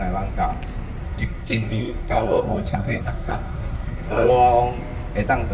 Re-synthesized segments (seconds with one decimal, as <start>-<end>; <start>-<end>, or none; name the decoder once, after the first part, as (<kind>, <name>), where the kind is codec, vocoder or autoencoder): 1.0-4.3 (codec, SNAC)